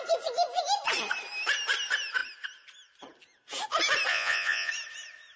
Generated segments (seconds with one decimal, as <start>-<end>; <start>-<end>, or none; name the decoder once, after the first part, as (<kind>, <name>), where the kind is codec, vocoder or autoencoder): 4.1-4.7 (vocoder, Vocos)